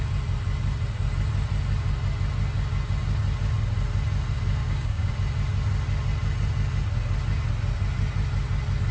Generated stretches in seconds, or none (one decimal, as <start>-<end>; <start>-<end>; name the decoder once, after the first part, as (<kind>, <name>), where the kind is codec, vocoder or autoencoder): 4.6-5.1 (codec, DAC)

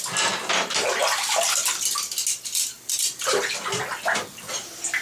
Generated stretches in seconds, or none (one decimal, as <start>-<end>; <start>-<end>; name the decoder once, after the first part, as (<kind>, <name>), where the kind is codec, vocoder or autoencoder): none

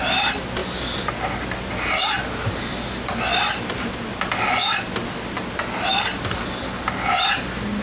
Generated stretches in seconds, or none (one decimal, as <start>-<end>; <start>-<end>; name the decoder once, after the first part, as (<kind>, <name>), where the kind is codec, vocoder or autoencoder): 0.6-3.8 (vocoder, BigVGAN v2); 5.9-6.4

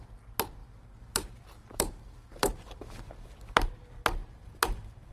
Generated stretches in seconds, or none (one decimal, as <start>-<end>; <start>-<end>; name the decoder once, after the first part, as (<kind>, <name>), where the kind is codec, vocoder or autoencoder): 0.6-3.7 (vocoder, BigVGAN v2); 4.2-5.1

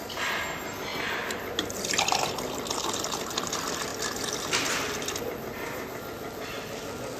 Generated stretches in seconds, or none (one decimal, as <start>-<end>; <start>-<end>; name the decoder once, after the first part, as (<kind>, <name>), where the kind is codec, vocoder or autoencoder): none

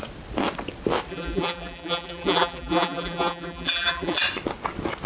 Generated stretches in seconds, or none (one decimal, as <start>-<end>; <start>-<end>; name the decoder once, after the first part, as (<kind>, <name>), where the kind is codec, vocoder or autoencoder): 1.1-4.2 (vocoder, BigVGAN v2)

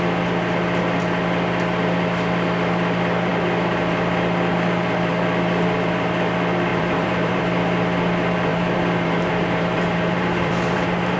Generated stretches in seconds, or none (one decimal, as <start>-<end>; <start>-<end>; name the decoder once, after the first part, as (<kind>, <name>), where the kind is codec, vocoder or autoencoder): 6.7-7.4 (vocoder, BigVGAN v2); 8.5-11.2